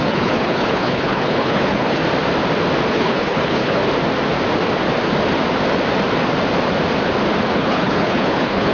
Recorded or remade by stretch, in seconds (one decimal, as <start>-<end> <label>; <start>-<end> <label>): 0.0-2.0 remade; 2.0-2.9 recorded; 2.9-3.8 remade; 3.8-7.5 recorded; 7.5-8.7 remade